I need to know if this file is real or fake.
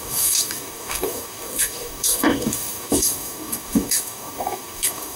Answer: fake